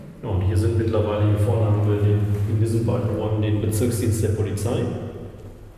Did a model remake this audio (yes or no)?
no